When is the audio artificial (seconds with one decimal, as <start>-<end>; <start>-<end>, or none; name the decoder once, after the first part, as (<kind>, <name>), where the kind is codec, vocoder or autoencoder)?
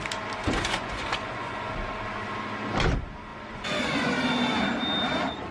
0.4-1.7 (vocoder, Vocos); 3.3-4.1